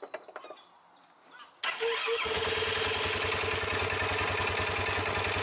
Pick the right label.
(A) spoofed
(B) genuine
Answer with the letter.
B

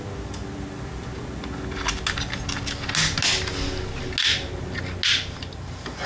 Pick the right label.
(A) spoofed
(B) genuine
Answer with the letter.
B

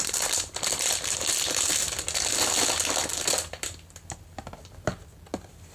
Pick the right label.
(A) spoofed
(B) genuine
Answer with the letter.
B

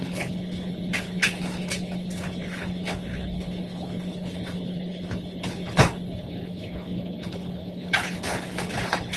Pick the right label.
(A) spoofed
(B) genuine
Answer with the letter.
A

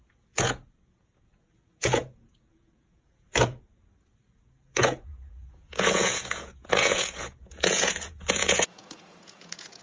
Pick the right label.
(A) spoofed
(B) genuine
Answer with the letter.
A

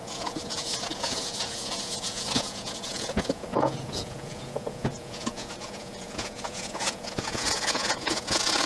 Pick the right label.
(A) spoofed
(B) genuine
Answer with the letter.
A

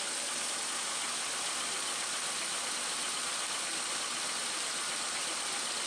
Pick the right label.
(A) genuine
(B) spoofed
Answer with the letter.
A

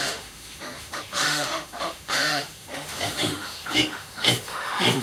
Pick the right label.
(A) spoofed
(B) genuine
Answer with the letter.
A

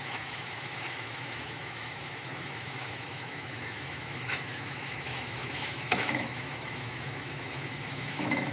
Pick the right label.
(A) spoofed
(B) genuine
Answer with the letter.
A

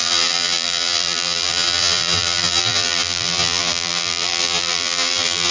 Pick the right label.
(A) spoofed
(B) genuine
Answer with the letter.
A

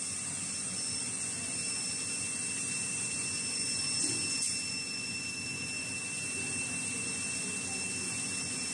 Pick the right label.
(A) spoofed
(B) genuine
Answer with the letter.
A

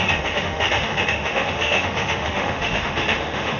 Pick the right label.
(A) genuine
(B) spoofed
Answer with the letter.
B